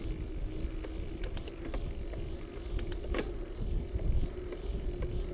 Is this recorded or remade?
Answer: recorded